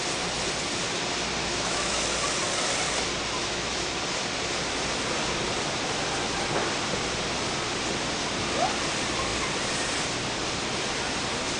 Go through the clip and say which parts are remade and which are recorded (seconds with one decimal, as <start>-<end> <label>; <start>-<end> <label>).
0.0-1.4 recorded; 1.4-2.0 remade; 2.0-3.4 recorded; 3.4-4.0 remade; 4.0-11.6 recorded